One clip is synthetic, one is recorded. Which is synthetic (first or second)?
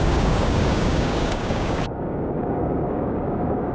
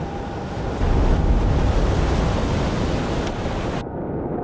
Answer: first